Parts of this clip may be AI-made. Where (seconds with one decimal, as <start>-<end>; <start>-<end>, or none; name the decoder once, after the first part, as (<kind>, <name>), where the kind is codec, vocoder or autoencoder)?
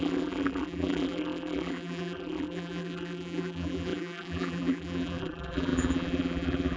0.0-6.8 (vocoder, BigVGAN v2)